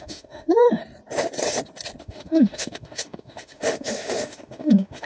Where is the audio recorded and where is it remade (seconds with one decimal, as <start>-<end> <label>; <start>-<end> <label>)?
0.0-0.8 remade; 0.8-2.0 recorded; 2.0-5.1 remade